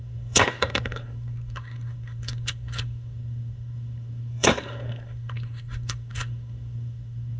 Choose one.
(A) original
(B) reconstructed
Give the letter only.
B